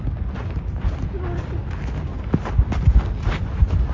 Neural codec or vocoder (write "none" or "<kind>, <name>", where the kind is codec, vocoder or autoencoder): none